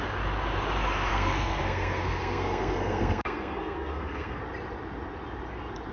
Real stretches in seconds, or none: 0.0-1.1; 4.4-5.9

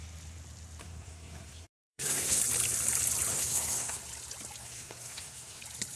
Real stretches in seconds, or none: 0.0-0.8; 2.4-3.3; 4.0-4.6; 5.6-6.0

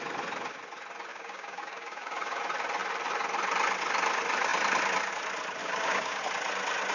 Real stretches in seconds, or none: 0.0-1.1; 2.4-5.6; 6.2-6.9

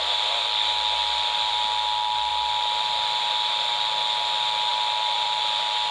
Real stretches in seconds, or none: 0.0-1.0; 1.6-2.3; 3.9-4.7; 5.4-5.9

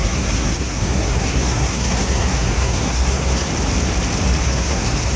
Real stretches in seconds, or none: 3.5-4.4

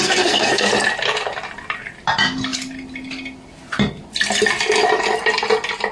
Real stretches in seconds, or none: 0.7-5.9

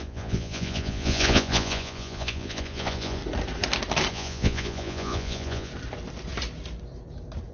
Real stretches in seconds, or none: 3.2-4.1; 5.7-7.5

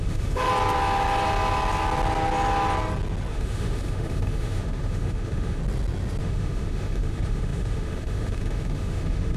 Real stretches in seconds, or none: 0.5-3.3; 5.6-6.2